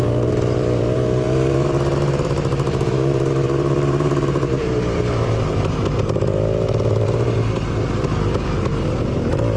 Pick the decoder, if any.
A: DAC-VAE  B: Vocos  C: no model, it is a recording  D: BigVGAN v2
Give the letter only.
D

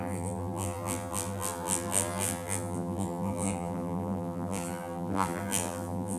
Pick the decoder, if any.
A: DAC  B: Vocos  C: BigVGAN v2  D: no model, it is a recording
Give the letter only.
C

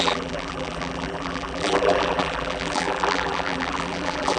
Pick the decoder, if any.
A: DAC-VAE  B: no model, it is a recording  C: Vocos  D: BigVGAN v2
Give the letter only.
D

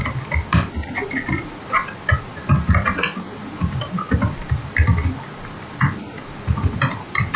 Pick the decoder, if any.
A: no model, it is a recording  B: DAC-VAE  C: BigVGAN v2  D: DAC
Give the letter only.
C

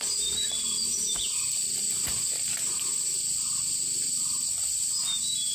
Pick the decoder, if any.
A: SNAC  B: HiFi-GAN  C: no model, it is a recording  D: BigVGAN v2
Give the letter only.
D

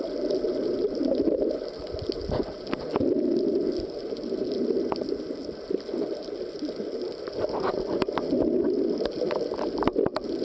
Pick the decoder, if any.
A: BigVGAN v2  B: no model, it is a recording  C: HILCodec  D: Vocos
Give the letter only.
B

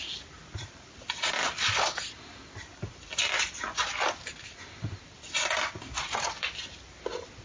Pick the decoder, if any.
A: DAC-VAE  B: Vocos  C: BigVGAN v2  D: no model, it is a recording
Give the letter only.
D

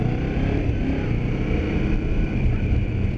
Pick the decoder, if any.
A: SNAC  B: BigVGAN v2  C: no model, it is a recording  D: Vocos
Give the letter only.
B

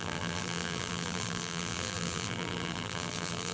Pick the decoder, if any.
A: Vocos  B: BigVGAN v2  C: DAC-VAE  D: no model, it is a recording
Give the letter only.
B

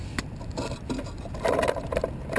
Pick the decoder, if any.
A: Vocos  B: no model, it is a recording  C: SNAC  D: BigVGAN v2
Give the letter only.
B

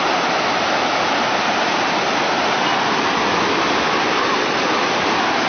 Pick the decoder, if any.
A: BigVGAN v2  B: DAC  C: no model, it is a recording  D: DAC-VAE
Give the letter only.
C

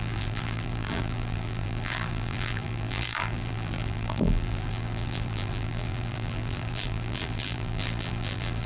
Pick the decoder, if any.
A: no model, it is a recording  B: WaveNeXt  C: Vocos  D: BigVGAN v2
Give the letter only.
D